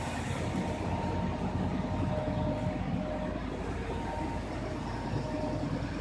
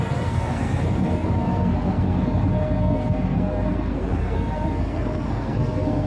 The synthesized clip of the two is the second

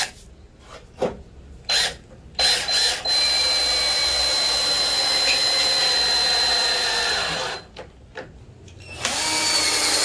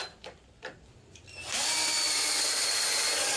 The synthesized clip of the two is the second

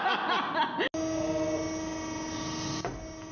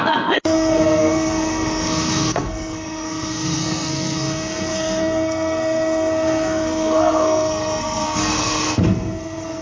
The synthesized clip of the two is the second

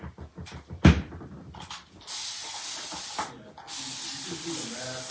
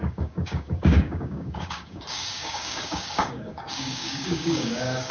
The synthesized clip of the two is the second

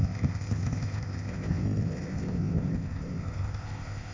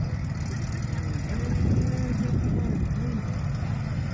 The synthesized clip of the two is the first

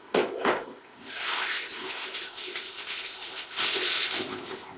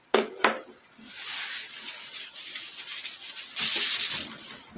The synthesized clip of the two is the first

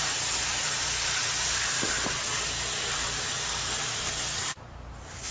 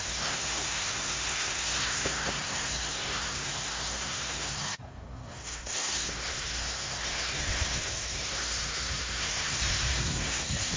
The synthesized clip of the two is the second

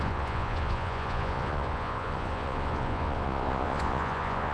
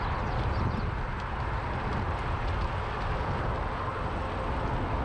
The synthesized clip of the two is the first